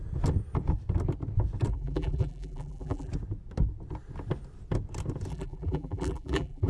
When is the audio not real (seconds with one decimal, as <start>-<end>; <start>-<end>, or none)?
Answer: 1.7-3.1; 5.3-6.7